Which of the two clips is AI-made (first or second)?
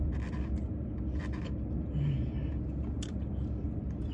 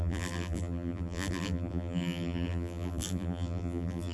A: second